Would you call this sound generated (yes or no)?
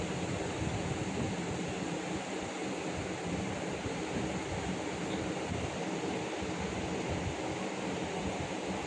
no